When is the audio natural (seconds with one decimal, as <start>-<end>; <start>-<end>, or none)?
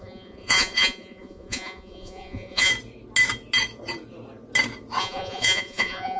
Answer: 2.7-5.0